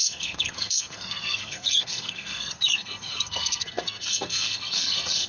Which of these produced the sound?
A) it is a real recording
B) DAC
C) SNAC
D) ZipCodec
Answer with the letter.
C